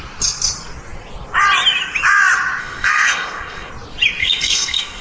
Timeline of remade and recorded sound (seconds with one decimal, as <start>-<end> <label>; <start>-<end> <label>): 0.0-2.6 recorded; 2.6-3.7 remade; 3.7-4.2 recorded; 4.2-5.0 remade